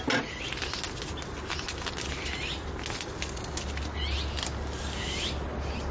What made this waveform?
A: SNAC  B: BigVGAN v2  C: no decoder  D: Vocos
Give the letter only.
C